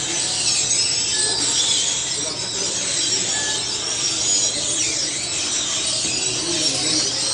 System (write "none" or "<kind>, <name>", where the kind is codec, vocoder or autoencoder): none